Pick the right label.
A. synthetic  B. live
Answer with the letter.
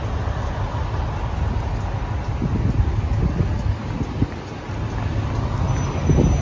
B